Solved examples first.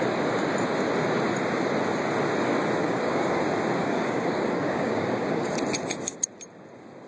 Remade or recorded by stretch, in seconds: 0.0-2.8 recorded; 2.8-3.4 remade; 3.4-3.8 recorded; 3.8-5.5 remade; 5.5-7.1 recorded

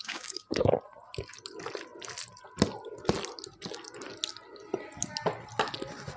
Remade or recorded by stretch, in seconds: 0.0-0.7 remade; 0.7-6.2 recorded